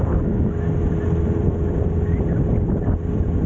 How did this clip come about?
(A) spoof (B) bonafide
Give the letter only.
B